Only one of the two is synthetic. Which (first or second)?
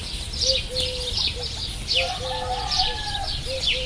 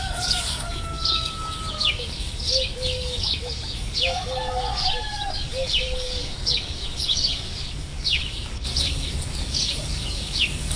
second